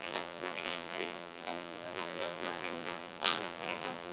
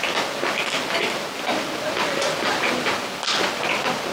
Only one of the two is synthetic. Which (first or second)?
first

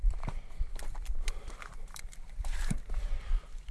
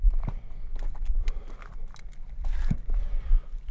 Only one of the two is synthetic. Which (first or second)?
first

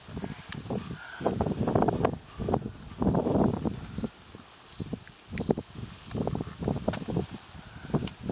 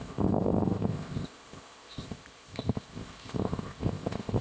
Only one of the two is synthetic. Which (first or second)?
second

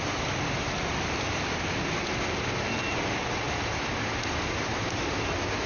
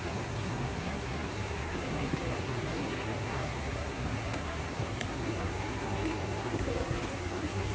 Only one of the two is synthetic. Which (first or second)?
second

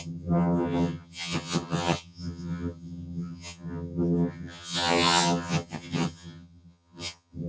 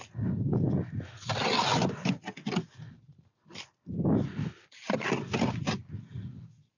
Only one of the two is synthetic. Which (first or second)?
first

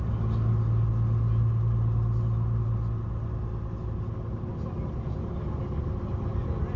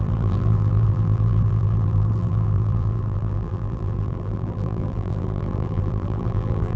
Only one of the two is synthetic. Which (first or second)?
second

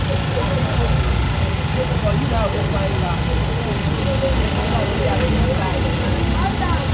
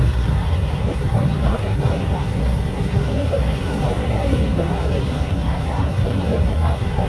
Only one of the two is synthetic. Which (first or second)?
second